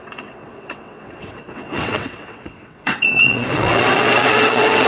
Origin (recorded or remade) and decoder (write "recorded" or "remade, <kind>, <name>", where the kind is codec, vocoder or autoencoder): remade, vocoder, WaveNeXt